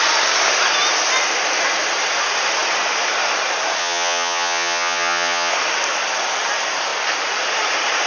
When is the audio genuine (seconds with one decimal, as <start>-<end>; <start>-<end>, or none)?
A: 0.0-3.8; 5.5-8.1